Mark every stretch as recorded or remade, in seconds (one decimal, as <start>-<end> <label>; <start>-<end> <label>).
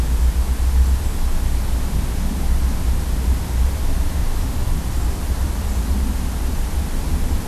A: 0.0-4.2 recorded; 4.2-4.9 remade; 4.9-7.5 recorded